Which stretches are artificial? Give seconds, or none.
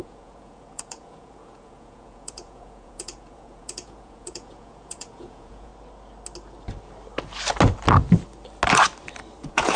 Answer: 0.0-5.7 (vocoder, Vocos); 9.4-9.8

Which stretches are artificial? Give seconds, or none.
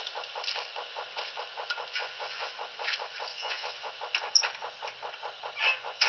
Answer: 1.9-2.5 (vocoder, Vocos); 3.3-3.9; 5.6-6.1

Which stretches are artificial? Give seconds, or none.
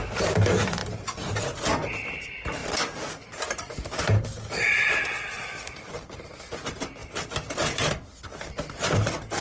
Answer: none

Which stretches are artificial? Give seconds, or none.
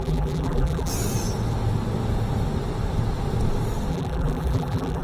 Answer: 0.0-0.9 (vocoder, BigVGAN v2); 3.9-5.0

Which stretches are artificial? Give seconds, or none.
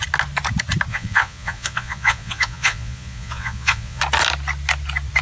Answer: 0.9-4.0 (vocoder, Vocos)